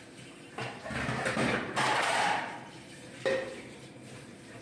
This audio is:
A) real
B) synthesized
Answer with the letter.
B